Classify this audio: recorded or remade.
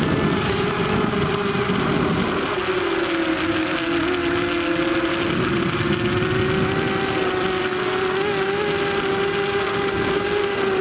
recorded